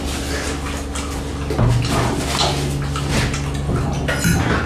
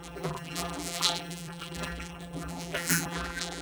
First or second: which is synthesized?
second